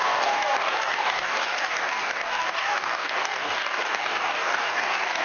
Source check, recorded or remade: remade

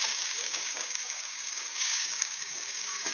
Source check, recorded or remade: remade